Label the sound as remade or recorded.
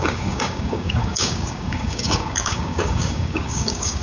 remade